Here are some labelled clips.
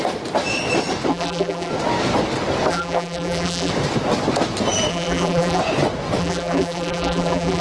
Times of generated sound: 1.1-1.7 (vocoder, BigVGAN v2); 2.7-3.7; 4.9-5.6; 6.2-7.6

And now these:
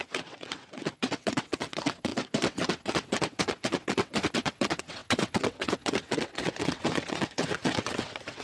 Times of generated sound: 0.0-8.4 (vocoder, WaveNeXt)

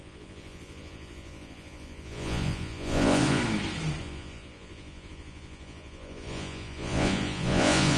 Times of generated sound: 0.0-3.4 (vocoder, Vocos); 4.0-8.0

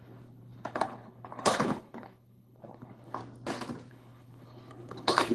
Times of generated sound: 0.0-3.2 (codec, HILCodec); 3.9-5.3

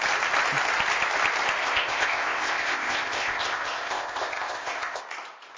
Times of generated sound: 1.6-5.0 (codec, ZipCodec)

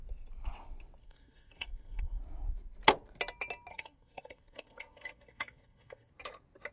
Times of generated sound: 1.0-2.2 (codec, SNAC); 3.7-6.1

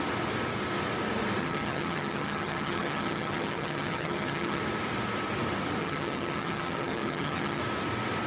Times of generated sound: 1.4-4.6 (vocoder, HiFi-GAN); 5.8-7.6